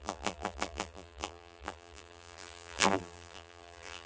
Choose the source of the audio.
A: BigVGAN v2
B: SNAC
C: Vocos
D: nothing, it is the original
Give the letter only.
A